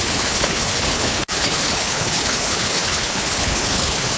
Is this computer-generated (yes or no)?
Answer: yes